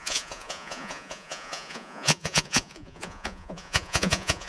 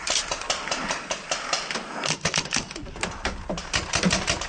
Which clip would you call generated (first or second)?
first